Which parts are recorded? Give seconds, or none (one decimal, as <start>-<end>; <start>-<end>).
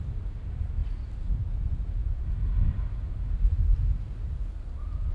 0.0-5.1